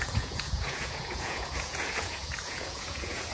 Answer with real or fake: fake